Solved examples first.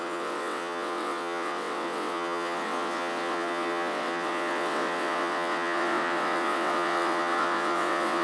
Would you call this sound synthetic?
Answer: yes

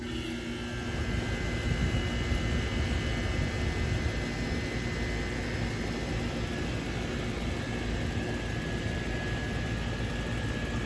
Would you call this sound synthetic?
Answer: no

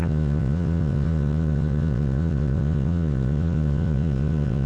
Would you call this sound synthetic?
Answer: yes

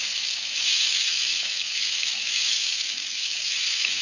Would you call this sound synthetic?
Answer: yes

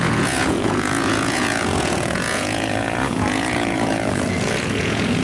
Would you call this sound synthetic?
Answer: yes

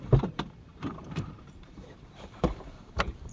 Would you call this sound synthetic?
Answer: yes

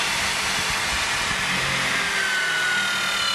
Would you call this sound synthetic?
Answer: no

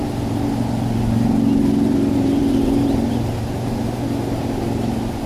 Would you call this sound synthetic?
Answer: yes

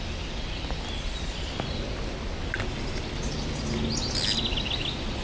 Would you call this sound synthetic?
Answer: no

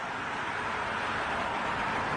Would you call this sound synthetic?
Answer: no